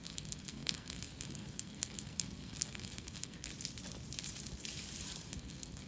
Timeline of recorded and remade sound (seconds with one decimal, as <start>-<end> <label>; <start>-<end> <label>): 0.0-3.5 remade; 3.5-5.3 recorded; 5.3-5.9 remade